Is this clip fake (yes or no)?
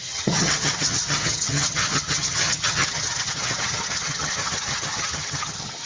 yes